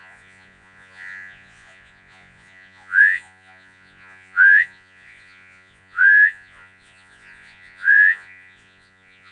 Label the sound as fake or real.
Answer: fake